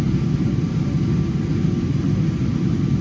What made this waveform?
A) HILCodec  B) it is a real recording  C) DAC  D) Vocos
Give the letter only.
B